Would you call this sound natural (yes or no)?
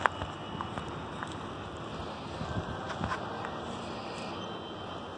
yes